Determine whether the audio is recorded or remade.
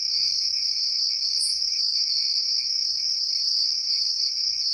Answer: remade